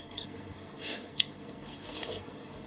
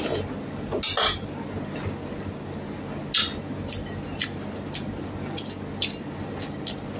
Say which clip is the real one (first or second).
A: second